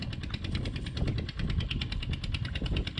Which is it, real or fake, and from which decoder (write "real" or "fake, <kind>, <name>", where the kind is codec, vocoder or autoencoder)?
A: real